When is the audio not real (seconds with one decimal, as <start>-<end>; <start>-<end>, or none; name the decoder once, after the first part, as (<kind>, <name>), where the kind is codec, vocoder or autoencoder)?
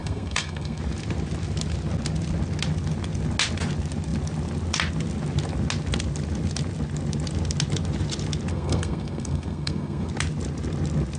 0.0-0.8 (codec, SNAC); 8.5-10.1